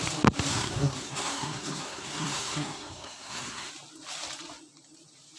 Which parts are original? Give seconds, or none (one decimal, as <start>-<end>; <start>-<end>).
0.0-0.5; 3.7-5.4